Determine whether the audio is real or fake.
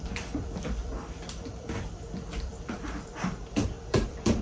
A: fake